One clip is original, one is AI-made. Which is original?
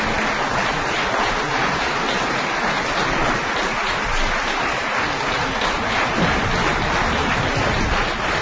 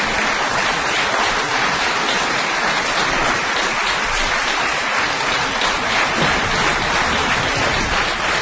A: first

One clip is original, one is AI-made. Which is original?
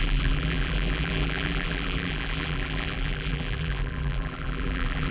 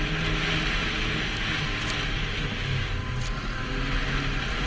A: second